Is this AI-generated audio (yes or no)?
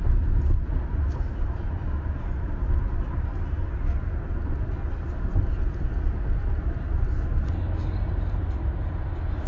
no